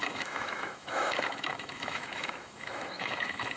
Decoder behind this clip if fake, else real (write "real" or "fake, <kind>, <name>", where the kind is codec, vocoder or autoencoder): fake, autoencoder, DAC-VAE